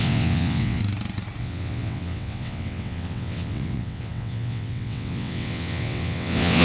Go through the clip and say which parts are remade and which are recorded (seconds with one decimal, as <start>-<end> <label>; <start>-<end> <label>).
0.0-0.8 remade; 0.8-1.4 recorded; 1.4-6.6 remade